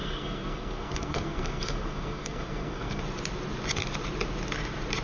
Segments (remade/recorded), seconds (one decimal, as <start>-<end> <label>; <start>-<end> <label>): 0.0-3.0 remade; 3.0-5.0 recorded